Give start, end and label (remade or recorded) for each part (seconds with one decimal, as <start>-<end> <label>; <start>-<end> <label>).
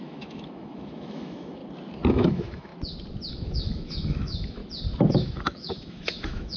0.0-1.6 remade; 1.6-2.1 recorded; 2.1-2.7 remade; 2.7-3.3 recorded; 3.3-4.6 remade; 4.6-5.1 recorded; 5.1-6.6 remade